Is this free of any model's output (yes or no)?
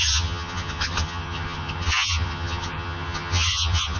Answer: no